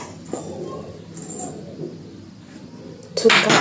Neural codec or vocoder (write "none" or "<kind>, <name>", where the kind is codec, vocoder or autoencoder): none